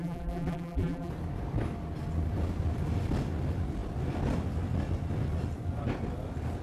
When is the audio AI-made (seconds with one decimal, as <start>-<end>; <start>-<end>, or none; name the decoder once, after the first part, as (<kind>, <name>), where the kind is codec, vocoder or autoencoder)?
0.0-1.1 (vocoder, BigVGAN v2)